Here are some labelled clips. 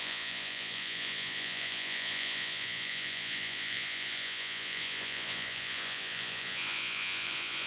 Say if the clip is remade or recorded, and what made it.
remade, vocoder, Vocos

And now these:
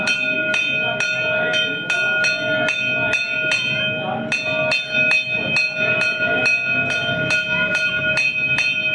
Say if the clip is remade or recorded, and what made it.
recorded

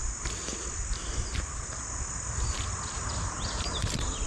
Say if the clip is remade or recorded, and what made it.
recorded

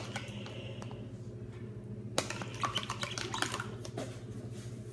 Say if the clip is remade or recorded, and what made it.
recorded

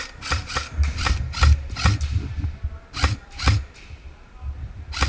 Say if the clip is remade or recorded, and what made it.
recorded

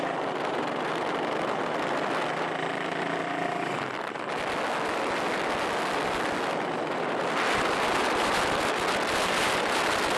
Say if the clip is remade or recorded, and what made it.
recorded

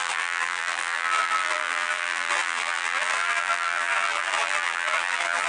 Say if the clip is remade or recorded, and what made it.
remade, vocoder, BigVGAN v2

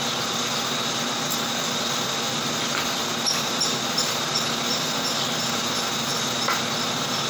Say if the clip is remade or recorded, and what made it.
recorded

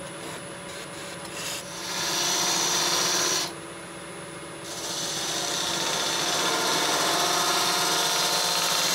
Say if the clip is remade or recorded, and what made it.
recorded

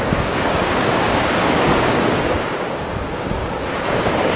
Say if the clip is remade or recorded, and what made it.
remade, codec, DAC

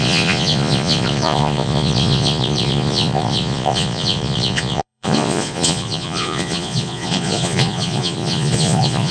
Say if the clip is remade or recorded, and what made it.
remade, vocoder, Vocos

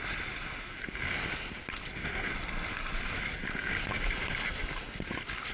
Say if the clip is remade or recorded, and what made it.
recorded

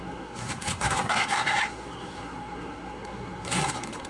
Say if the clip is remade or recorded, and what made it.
remade, codec, SNAC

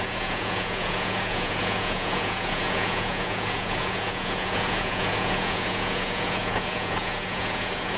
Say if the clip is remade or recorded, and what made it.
remade, vocoder, Vocos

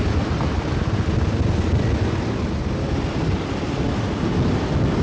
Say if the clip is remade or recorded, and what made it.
recorded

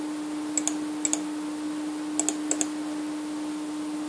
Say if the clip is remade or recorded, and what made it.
recorded